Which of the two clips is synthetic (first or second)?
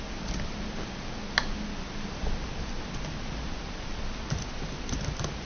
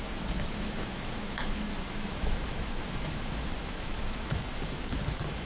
second